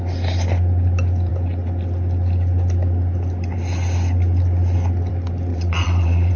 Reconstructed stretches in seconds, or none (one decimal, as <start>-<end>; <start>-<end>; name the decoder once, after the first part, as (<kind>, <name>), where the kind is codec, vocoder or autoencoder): 5.5-6.4 (vocoder, WaveNeXt)

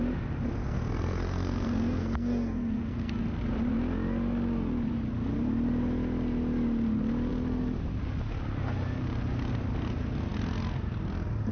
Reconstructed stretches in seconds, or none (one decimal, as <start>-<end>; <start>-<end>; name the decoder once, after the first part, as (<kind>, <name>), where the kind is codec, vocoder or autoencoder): 0.6-3.2 (codec, SNAC)

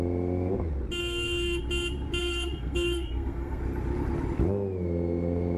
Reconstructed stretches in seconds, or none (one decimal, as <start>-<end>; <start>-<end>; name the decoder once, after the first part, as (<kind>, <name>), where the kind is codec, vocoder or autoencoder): 1.0-1.6 (codec, SNAC); 2.2-3.6

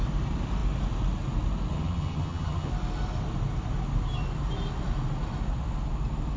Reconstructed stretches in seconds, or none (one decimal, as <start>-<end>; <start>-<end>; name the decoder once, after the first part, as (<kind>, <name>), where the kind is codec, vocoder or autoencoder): 1.7-2.7 (vocoder, HiFi-GAN)

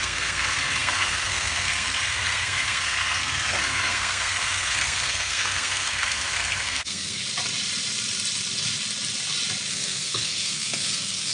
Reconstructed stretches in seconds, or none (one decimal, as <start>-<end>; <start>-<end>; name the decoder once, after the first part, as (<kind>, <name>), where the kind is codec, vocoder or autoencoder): 0.0-7.2 (codec, SNAC); 9.7-11.3